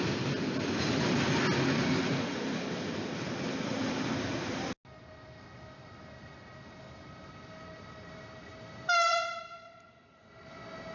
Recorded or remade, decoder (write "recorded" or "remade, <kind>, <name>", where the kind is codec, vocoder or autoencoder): recorded